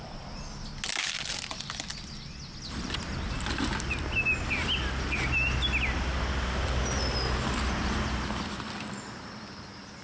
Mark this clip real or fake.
real